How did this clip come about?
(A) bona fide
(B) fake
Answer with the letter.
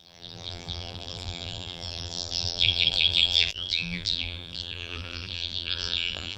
B